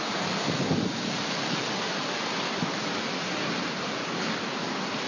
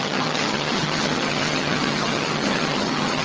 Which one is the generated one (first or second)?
second